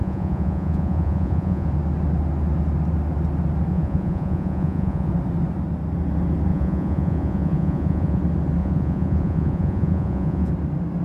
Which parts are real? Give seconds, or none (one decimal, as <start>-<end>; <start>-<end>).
1.7-3.7; 5.1-6.5; 8.2-8.6; 10.5-11.0